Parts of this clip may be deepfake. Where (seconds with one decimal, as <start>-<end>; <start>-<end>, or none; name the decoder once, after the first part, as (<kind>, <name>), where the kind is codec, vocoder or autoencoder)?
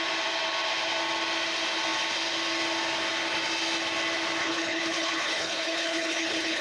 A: 4.4-6.6 (codec, HILCodec)